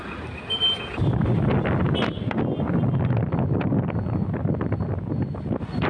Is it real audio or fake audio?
real